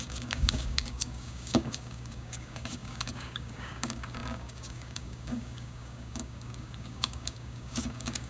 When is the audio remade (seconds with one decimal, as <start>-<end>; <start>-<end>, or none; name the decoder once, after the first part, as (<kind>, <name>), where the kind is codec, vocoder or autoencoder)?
0.0-8.3 (codec, DAC)